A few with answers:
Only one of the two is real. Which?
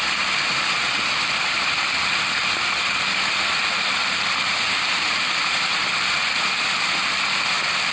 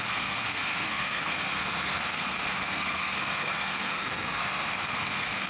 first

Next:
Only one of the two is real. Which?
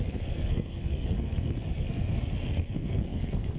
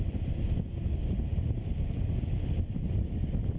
second